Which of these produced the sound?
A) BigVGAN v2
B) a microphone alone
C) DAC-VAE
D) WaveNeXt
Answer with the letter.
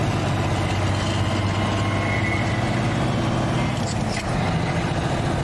B